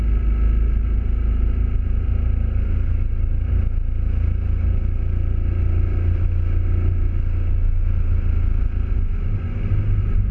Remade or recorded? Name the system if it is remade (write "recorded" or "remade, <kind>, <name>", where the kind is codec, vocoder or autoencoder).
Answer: recorded